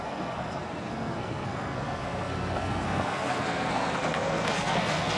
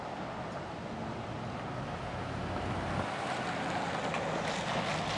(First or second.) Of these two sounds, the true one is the second